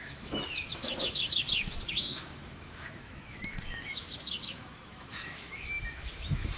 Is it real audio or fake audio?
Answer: fake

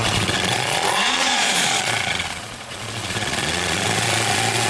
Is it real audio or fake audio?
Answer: fake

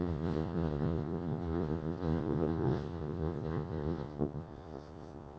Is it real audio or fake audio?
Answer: fake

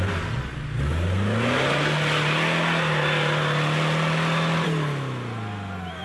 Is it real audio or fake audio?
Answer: real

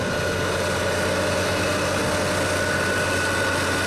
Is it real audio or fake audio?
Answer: real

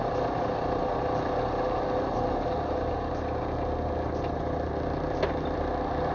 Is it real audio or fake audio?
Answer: real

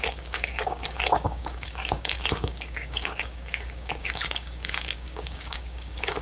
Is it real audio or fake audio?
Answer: fake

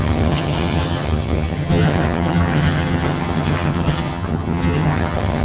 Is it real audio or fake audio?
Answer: fake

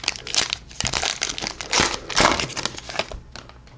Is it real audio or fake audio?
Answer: real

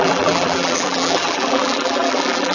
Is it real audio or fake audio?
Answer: fake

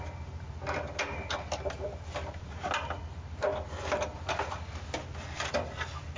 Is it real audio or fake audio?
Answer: real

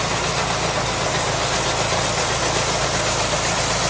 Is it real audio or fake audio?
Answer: real